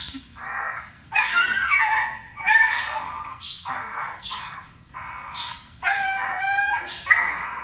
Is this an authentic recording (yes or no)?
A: no